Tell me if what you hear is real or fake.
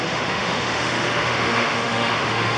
fake